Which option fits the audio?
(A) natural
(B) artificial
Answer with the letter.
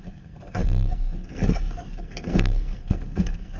B